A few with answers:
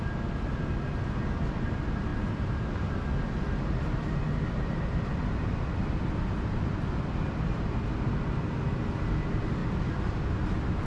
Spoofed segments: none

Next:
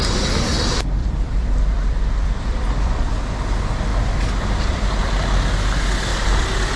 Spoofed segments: 1.0-3.1 (vocoder, BigVGAN v2); 6.1-6.8

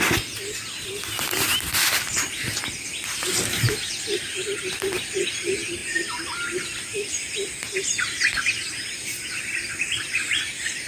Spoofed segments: none

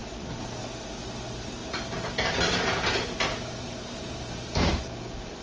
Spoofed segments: 1.6-4.8 (vocoder, BigVGAN v2)

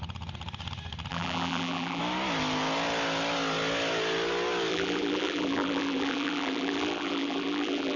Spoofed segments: 1.1-2.0 (vocoder, BigVGAN v2); 4.7-8.0